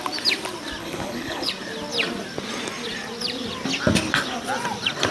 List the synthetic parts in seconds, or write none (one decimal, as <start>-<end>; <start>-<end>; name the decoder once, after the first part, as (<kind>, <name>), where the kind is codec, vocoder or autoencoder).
0.8-1.5 (codec, HILCodec)